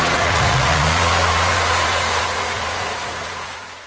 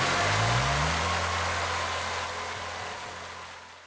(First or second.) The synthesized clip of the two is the first